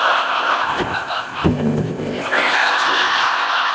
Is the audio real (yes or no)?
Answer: no